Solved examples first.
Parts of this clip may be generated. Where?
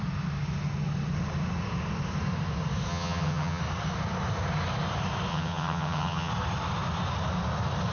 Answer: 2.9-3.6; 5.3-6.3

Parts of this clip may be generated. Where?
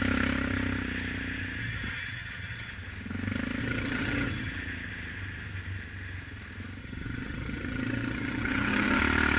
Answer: 1.6-2.7; 3.6-4.5; 6.8-9.0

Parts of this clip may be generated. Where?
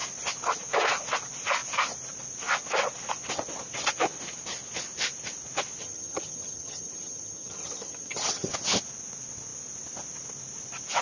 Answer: 5.8-8.5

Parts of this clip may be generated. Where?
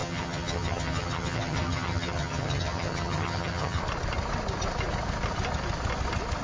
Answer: 0.0-3.8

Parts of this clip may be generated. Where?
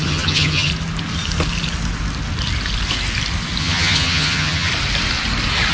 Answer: 0.0-0.7; 3.6-4.7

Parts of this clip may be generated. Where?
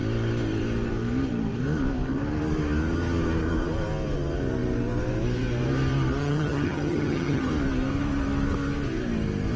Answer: 6.2-7.5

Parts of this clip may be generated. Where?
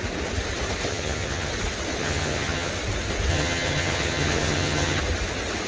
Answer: 0.9-1.5; 2.0-2.7; 3.3-5.0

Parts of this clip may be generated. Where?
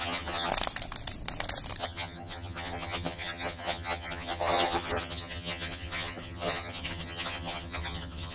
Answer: 0.0-0.5; 1.8-8.3